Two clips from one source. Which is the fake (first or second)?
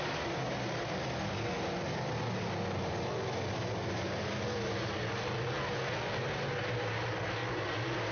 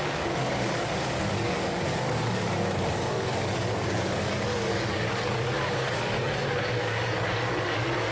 second